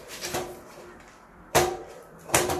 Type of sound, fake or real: fake